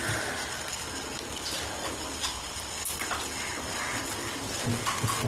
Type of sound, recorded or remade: recorded